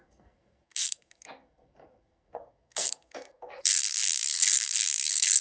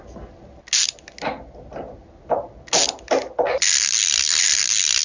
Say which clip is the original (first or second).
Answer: second